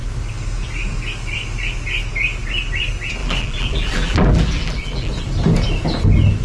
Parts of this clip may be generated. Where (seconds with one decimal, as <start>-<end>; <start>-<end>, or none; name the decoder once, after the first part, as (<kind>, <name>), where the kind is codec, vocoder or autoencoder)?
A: 3.2-5.1 (vocoder, BigVGAN v2)